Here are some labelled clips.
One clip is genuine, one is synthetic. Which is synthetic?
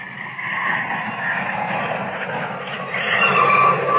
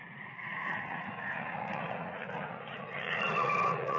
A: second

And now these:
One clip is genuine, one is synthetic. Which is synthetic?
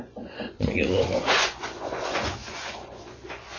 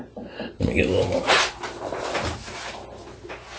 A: first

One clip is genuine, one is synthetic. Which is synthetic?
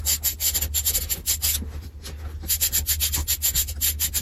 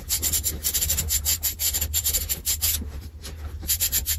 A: second